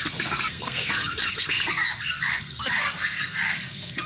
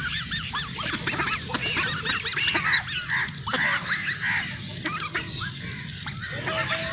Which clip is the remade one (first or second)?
first